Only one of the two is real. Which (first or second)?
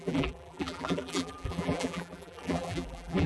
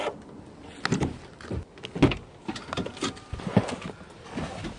second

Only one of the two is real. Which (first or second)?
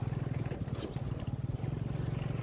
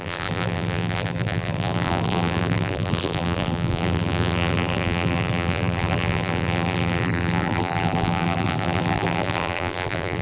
first